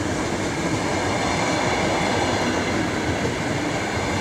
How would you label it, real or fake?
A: real